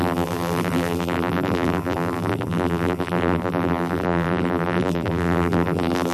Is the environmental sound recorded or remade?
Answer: remade